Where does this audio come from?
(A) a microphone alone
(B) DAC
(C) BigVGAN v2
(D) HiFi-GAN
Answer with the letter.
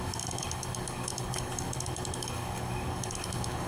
B